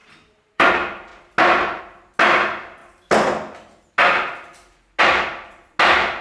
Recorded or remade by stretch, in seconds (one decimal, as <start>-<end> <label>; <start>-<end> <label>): 0.0-0.7 remade; 0.7-6.2 recorded